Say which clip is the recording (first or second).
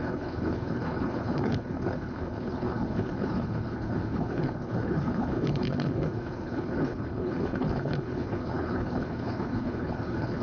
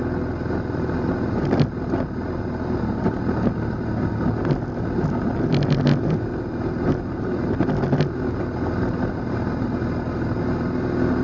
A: second